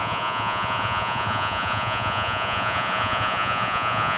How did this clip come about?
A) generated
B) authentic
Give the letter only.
A